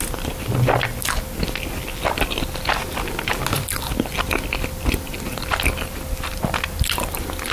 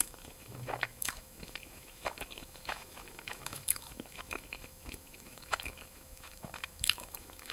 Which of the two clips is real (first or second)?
first